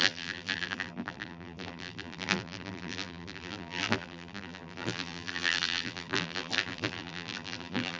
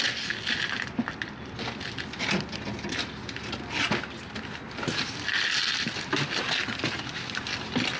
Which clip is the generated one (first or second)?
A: first